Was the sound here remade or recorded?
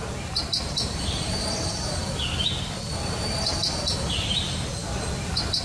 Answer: recorded